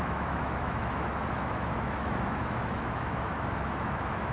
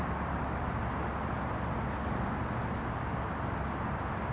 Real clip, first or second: second